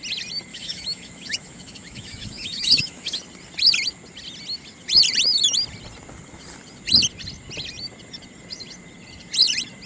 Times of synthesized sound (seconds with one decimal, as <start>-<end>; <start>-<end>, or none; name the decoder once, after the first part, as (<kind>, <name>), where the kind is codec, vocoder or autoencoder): 0.5-3.2 (autoencoder, DAC-VAE)